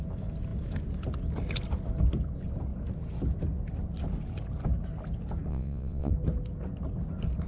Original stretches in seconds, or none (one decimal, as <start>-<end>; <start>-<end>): 0.0-5.5; 6.1-7.5

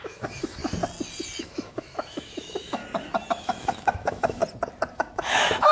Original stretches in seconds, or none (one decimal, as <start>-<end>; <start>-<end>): 0.6-1.4; 2.8-3.3; 4.4-4.9

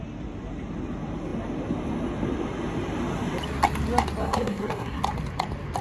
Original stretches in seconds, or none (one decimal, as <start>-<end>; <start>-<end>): 0.0-4.2; 5.0-5.8

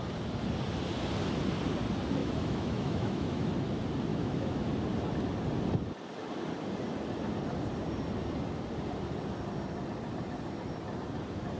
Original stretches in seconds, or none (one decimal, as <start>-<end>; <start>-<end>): 0.0-2.2; 3.5-4.1; 4.7-11.6

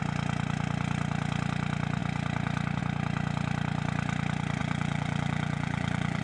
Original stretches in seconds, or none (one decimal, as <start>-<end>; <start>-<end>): 0.0-4.6

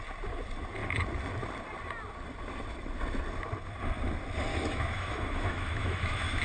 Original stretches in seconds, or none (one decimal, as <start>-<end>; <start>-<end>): 0.0-4.5